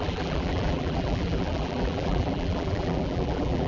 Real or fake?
fake